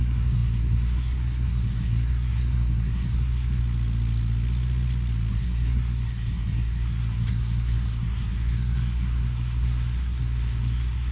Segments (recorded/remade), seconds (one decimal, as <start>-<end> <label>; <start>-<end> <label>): 0.0-3.6 remade; 3.6-5.3 recorded; 5.3-11.1 remade